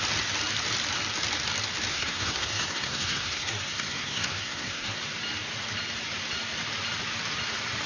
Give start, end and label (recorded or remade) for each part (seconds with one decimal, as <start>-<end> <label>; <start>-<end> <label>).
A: 0.0-1.9 recorded; 1.9-5.0 remade; 5.0-7.9 recorded